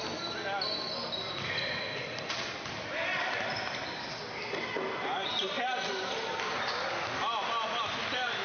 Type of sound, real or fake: real